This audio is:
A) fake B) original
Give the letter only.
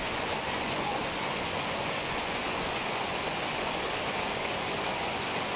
A